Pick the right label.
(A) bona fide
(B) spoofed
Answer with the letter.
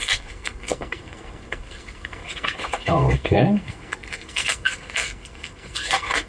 B